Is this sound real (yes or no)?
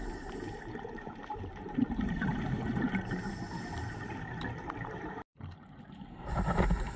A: no